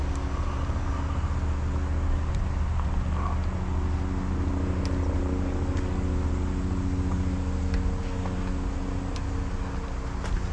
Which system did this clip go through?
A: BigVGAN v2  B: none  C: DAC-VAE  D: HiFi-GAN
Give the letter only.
B